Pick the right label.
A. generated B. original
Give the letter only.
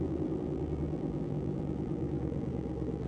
A